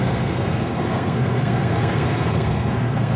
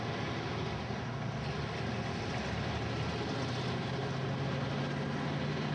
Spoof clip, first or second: first